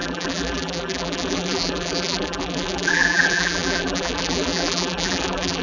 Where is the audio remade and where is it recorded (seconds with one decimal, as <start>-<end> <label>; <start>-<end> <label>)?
0.0-5.6 remade